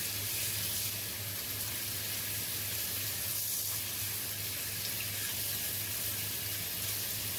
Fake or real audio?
real